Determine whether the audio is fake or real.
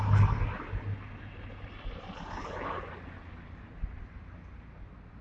real